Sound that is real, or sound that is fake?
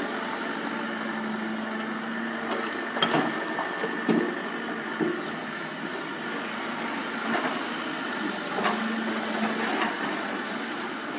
real